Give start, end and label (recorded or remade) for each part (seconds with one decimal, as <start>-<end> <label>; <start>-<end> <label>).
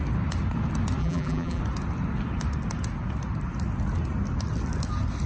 0.0-1.0 recorded; 1.0-1.6 remade; 1.6-5.3 recorded